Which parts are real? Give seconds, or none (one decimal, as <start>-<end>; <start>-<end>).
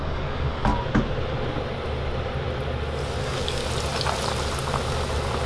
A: 0.7-3.2; 3.6-5.5